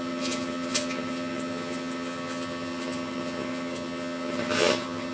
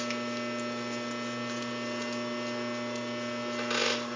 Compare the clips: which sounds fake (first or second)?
first